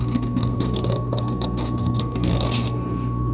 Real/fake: fake